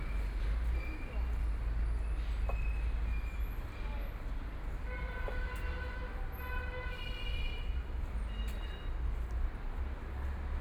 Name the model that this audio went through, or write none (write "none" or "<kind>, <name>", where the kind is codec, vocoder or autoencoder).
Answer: none